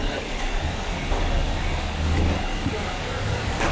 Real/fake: fake